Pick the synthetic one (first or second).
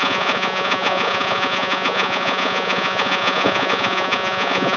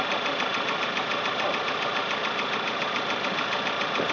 first